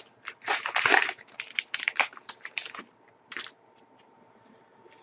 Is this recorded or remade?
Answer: remade